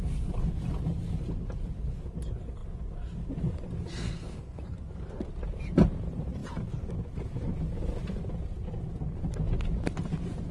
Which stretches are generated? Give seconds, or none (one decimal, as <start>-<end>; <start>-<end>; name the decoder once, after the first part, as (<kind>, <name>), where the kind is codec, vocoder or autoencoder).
4.0-4.6 (codec, SNAC)